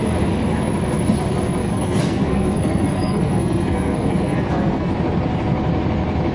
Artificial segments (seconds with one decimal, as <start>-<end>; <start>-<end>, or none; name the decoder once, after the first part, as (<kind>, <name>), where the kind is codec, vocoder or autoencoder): 1.6-4.9 (codec, SNAC)